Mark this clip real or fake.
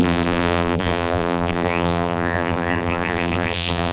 fake